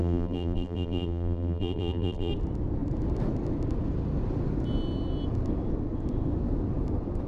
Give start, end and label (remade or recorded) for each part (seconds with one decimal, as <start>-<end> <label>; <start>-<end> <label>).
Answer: 0.0-2.3 remade; 2.3-7.3 recorded